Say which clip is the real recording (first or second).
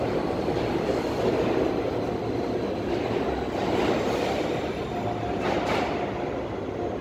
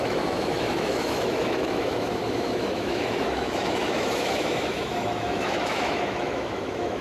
first